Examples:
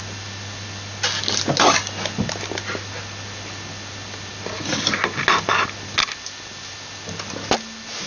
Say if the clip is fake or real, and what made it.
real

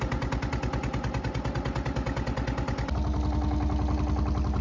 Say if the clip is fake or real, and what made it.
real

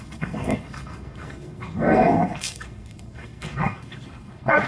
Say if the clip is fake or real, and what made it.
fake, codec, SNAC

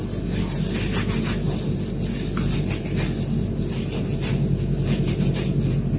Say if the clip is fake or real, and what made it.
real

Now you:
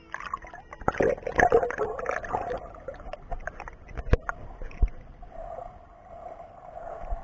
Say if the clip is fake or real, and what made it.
real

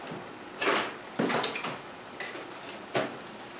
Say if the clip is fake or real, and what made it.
real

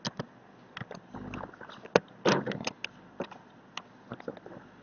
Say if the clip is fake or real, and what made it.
real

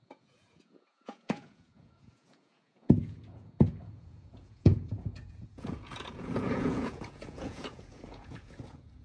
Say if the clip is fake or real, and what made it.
fake, vocoder, Vocos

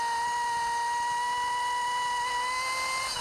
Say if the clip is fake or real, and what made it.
real